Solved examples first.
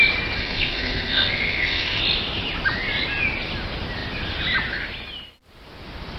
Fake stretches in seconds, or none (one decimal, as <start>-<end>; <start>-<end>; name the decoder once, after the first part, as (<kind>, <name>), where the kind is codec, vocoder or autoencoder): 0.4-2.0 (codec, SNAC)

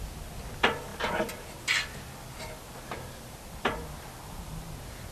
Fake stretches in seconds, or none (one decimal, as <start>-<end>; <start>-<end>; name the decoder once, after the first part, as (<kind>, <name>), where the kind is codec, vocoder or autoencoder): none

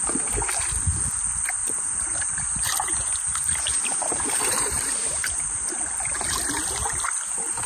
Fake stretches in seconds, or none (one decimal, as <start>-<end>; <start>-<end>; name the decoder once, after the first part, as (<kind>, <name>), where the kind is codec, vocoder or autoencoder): 1.6-5.7 (vocoder, BigVGAN v2)

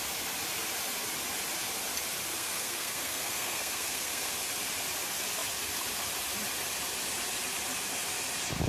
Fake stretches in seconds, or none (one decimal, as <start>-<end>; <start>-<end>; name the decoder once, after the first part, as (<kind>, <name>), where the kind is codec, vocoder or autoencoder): 2.3-4.3 (codec, SNAC)

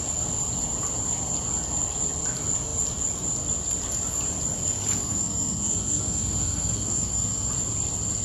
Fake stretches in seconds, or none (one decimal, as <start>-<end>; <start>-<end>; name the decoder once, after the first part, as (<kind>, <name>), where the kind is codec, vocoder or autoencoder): 5.0-7.5 (codec, SNAC)

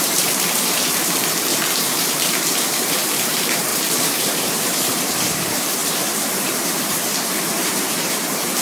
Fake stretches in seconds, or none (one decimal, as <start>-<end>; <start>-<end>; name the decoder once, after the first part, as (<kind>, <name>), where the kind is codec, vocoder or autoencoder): 0.0-5.8 (vocoder, BigVGAN v2); 6.4-8.6